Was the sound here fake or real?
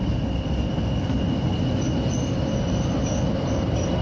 real